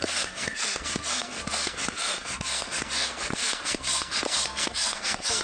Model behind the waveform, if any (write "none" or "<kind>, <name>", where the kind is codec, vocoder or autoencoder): codec, SNAC